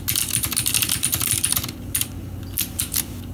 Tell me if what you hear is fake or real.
real